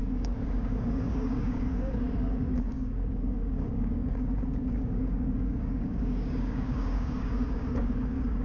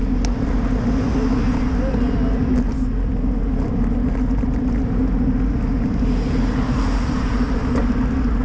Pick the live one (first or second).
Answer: second